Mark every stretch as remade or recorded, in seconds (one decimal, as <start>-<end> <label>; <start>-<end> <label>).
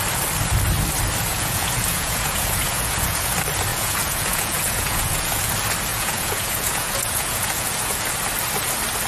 0.0-1.3 recorded; 1.3-3.3 remade; 3.3-3.7 recorded; 3.7-5.5 remade; 5.5-5.9 recorded; 5.9-8.1 remade; 8.1-9.1 recorded